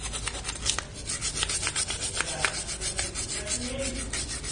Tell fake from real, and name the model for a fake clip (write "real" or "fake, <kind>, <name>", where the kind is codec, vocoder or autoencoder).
real